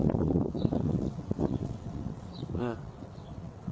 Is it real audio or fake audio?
fake